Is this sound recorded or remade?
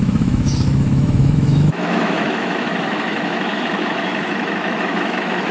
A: remade